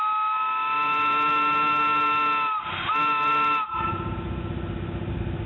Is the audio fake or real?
real